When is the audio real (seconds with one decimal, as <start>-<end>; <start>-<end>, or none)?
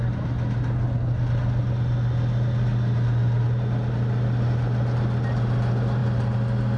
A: 0.0-6.8